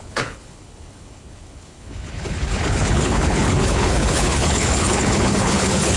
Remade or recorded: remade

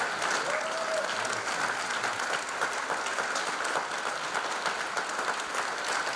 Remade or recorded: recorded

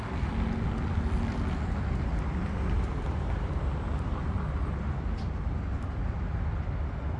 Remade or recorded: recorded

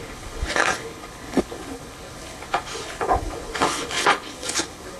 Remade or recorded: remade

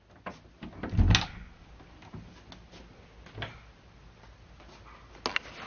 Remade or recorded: recorded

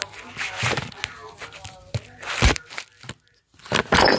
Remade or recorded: recorded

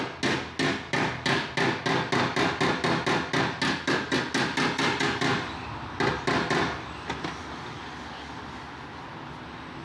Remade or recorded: recorded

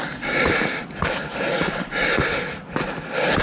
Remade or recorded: recorded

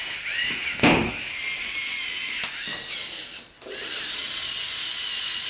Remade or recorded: recorded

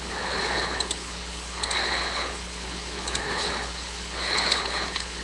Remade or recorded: remade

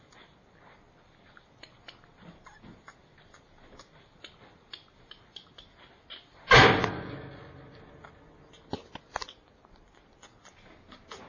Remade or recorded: recorded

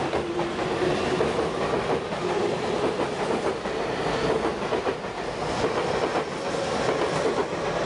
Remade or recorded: recorded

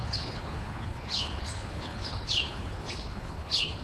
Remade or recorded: remade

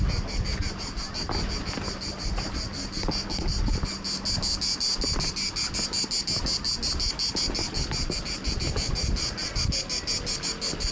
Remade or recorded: recorded